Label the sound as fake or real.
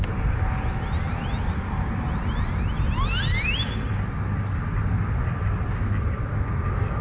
real